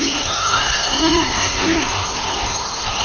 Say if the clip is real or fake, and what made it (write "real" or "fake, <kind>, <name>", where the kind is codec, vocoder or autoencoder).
fake, codec, SNAC